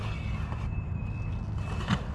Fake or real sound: real